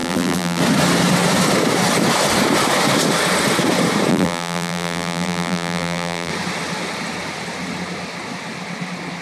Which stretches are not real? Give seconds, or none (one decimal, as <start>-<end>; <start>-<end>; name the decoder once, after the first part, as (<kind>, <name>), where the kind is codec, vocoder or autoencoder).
0.0-0.6 (vocoder, BigVGAN v2); 4.1-6.3